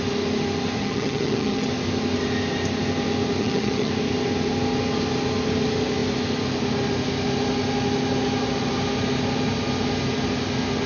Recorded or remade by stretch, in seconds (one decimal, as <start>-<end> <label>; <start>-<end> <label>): 0.0-0.8 recorded; 0.8-1.7 remade; 1.7-3.4 recorded; 3.4-3.9 remade; 3.9-10.9 recorded